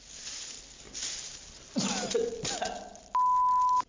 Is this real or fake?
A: real